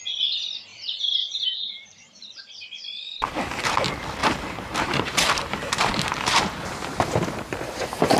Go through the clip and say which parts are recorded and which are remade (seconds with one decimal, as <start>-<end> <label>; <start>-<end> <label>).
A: 0.0-0.7 recorded; 0.7-2.4 remade; 2.4-4.2 recorded; 4.2-8.2 remade